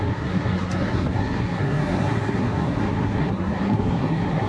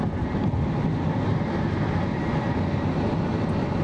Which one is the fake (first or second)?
first